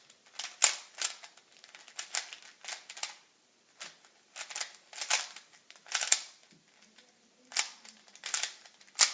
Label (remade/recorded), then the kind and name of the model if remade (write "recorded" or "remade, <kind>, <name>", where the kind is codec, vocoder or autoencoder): recorded